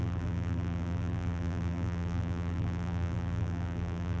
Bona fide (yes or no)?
no